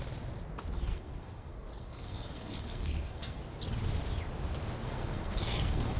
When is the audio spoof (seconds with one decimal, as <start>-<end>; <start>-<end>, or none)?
0.9-3.4; 4.8-6.0